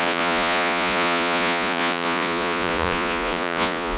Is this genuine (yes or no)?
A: no